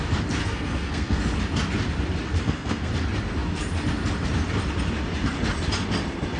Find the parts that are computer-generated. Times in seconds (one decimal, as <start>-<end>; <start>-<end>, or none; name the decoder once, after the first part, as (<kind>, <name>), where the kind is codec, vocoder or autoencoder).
0.4-1.2 (codec, SNAC); 2.3-2.9